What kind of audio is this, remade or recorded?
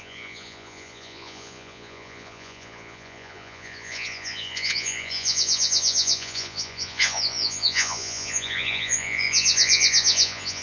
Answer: remade